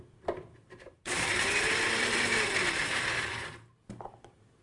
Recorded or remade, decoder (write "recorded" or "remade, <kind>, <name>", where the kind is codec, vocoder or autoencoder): remade, vocoder, BigVGAN v2